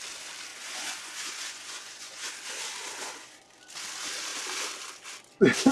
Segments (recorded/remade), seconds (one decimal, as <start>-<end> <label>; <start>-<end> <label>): 0.0-0.5 recorded; 0.5-2.3 remade; 2.3-2.8 recorded; 2.8-3.4 remade; 3.4-5.7 recorded